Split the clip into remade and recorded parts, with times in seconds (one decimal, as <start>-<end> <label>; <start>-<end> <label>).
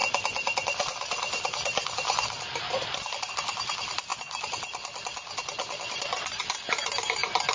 0.0-7.5 recorded